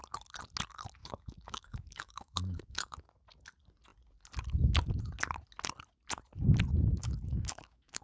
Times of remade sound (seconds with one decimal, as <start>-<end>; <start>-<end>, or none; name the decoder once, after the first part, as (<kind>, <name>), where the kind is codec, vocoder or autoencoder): 1.0-3.1 (autoencoder, DAC-VAE); 7.0-8.0